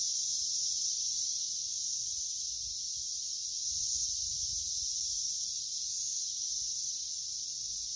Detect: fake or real real